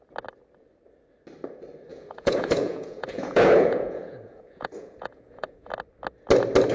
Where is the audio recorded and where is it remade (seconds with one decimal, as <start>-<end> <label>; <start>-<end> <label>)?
0.0-1.9 recorded; 1.9-5.7 remade; 5.7-6.7 recorded